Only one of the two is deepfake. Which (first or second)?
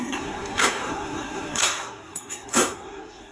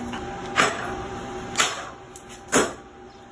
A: first